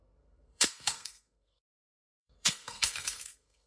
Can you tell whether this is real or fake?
fake